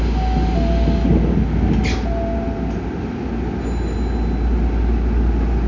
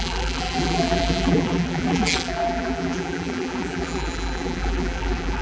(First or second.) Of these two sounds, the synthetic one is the second